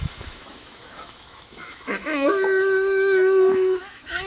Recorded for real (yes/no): no